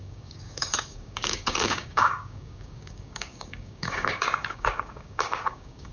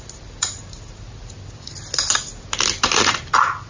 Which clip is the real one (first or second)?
second